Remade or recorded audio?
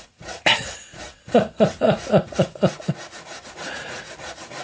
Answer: remade